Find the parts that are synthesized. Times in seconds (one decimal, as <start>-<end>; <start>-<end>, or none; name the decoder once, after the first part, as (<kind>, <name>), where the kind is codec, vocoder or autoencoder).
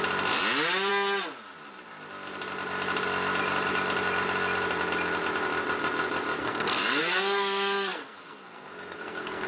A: 6.4-9.5 (codec, SNAC)